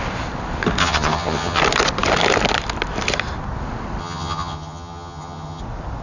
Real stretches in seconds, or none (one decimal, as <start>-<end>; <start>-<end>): 0.0-0.8; 1.6-4.0; 5.6-6.0

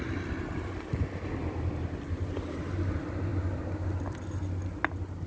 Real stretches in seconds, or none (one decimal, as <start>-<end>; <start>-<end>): 0.0-5.3

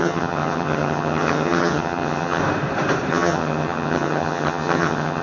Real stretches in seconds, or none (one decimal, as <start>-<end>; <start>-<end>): 2.4-3.1

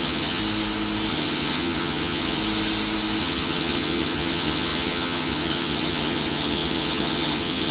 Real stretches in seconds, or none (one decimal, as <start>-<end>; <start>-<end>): 0.4-1.1; 2.4-3.2